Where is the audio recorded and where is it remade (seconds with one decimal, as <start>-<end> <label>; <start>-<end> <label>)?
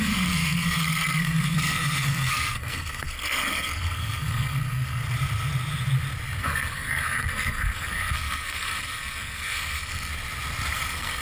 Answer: 0.0-5.0 remade; 5.0-6.4 recorded; 6.4-10.1 remade; 10.1-10.7 recorded; 10.7-11.2 remade